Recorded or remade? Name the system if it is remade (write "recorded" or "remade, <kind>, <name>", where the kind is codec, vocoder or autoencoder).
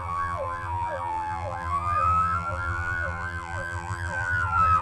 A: remade, vocoder, BigVGAN v2